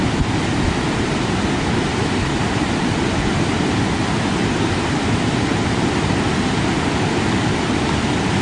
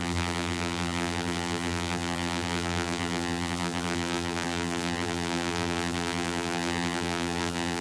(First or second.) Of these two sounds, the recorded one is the first